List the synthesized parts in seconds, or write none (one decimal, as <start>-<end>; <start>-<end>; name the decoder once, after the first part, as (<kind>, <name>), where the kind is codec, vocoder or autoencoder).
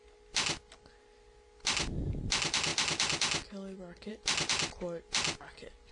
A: none